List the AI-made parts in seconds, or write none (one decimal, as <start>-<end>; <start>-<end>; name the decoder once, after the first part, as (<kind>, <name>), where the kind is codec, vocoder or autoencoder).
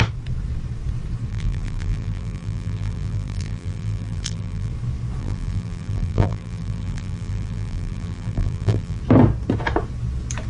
1.3-4.7 (vocoder, BigVGAN v2); 5.2-9.0